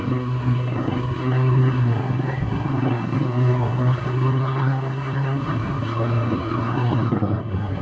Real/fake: fake